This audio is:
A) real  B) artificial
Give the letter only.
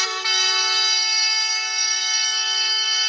B